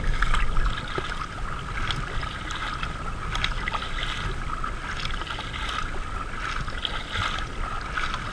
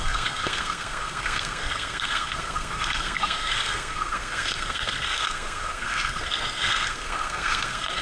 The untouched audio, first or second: first